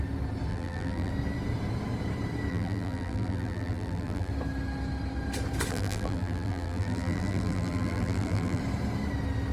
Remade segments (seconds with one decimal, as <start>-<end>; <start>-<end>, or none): 0.5-1.1; 2.5-4.3; 5.7-8.6